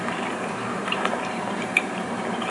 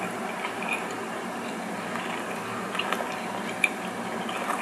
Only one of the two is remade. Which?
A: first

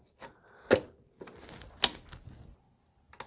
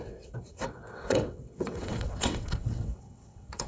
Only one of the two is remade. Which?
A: second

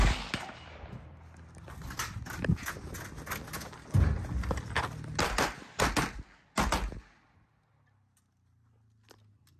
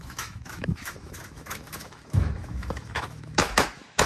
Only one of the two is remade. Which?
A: second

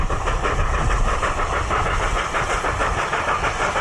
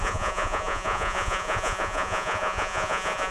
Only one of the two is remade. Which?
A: second